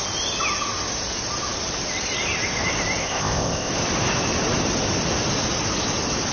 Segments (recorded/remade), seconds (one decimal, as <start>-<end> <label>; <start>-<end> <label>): 0.0-3.0 recorded; 3.0-3.7 remade; 3.7-6.3 recorded